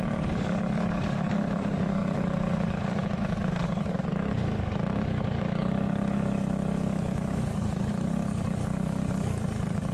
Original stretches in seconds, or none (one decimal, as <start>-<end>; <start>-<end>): none